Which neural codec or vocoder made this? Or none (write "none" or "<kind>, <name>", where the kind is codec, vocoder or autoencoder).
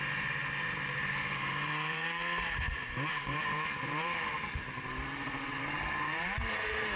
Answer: vocoder, BigVGAN v2